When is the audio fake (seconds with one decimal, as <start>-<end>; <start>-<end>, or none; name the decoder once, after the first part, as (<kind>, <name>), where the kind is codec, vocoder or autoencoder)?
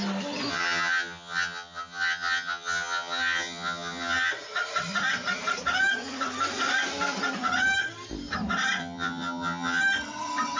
0.5-4.3 (vocoder, HiFi-GAN); 8.8-9.8